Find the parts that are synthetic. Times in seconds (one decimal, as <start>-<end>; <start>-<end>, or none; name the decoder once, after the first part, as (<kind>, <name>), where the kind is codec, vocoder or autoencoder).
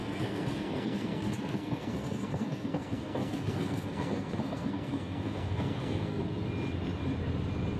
0.0-6.2 (codec, SNAC)